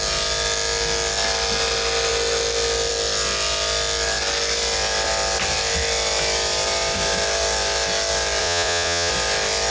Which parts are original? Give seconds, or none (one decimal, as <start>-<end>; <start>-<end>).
0.0-8.4; 9.1-9.7